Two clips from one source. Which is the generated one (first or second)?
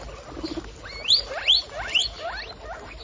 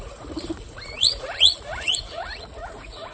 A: second